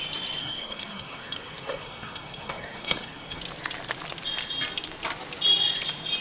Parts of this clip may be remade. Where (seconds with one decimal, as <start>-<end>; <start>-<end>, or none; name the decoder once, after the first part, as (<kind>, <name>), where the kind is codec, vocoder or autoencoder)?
0.4-3.4 (codec, SNAC)